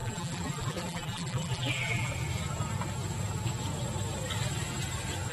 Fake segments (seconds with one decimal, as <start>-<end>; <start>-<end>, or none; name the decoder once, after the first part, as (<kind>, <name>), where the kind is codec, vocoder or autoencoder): 0.0-2.1 (vocoder, BigVGAN v2)